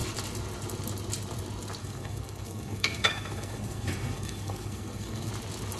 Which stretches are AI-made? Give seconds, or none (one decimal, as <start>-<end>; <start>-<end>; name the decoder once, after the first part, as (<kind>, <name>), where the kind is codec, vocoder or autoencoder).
1.8-5.3 (codec, SNAC)